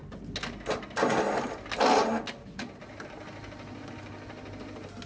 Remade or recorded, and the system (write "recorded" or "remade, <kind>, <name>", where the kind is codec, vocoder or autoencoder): recorded